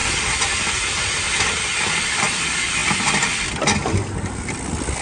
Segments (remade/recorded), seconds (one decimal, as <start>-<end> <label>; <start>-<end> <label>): 0.0-5.0 recorded